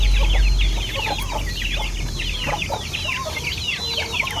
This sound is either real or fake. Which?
real